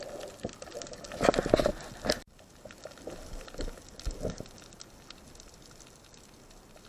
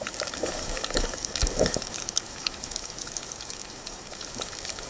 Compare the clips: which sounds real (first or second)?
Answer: first